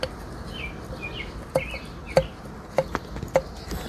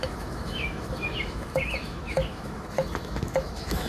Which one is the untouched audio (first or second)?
first